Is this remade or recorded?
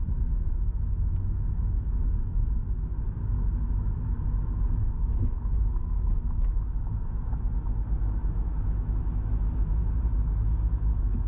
remade